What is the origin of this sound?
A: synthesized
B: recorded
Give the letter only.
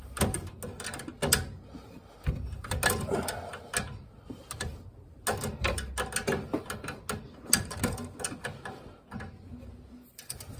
B